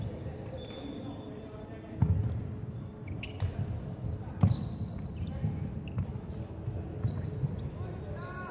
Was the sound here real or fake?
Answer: real